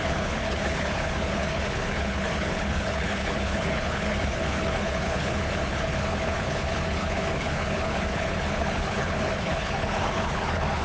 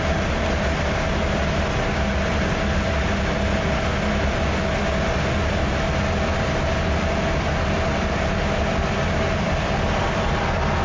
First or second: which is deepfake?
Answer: first